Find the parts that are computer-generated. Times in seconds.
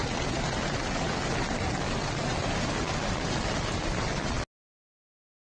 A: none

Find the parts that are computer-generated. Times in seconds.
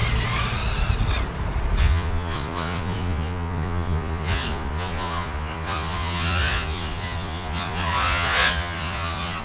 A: 1.8-9.4 (vocoder, Vocos)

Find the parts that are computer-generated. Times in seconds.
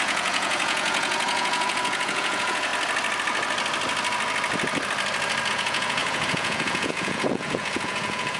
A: 0.0-2.7 (vocoder, Vocos); 5.5-8.4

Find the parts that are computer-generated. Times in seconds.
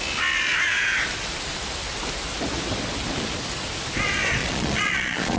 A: 4.4-5.4 (vocoder, Vocos)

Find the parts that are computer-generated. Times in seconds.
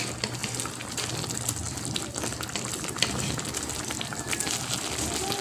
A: none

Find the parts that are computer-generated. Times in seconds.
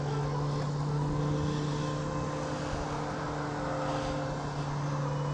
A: none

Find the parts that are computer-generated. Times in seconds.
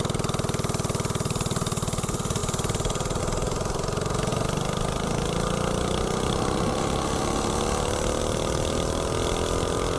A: none